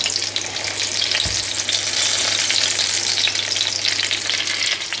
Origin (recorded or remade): recorded